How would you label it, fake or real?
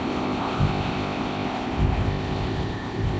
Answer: fake